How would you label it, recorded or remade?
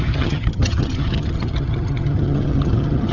remade